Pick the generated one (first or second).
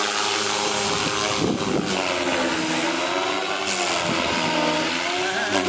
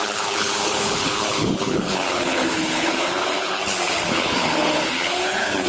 second